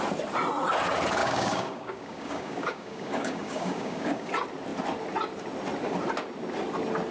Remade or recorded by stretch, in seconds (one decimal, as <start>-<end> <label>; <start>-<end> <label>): 0.0-1.2 recorded; 1.2-4.3 remade; 4.3-7.1 recorded